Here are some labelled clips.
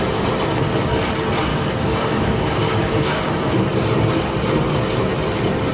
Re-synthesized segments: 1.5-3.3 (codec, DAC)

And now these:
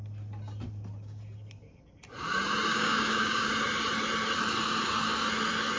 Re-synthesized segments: 2.7-3.5 (codec, DAC)

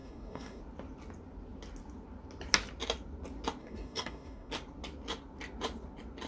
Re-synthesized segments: 0.0-0.6 (codec, DAC); 3.6-4.5

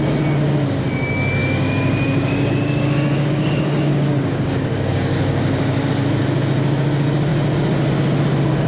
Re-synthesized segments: 1.4-5.9 (codec, DAC)

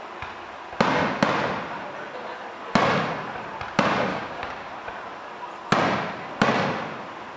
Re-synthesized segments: 4.1-4.7 (codec, DAC)

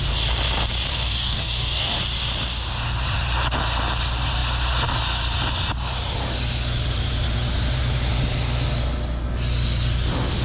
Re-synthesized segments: 0.9-2.0 (codec, DAC)

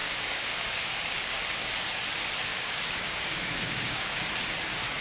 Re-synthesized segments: 0.0-2.0 (codec, DAC); 2.5-4.1

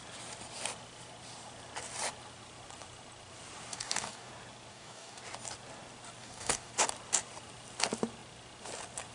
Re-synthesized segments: 3.7-4.3 (codec, DAC); 4.7-5.2; 6.2-6.7